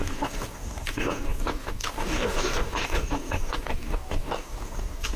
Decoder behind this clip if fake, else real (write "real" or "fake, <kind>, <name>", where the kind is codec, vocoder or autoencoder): fake, codec, DAC